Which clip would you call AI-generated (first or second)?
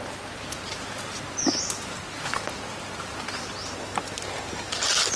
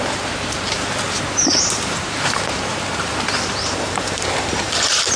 second